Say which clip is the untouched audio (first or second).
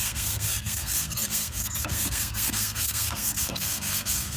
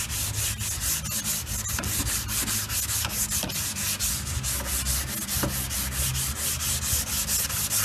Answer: second